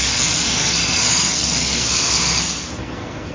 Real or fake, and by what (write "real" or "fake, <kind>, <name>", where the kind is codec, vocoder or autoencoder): fake, codec, SNAC